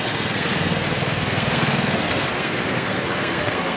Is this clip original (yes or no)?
no